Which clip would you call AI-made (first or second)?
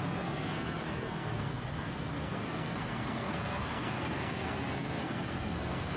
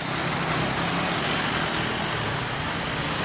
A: first